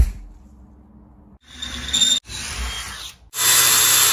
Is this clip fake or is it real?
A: real